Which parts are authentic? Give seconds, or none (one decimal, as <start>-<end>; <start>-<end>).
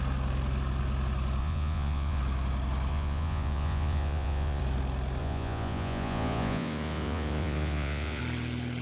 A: 0.0-1.4; 2.2-2.9; 4.6-5.2; 8.2-8.8